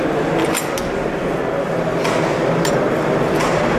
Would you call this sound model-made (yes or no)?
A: no